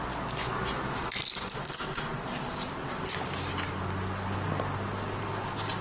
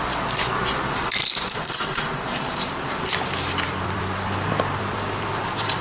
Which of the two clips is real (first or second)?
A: first